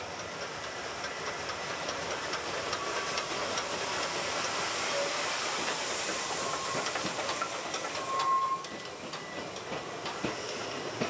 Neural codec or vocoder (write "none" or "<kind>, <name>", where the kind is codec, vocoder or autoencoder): vocoder, BigVGAN v2